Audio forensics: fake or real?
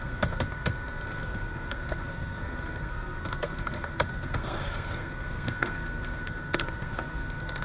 fake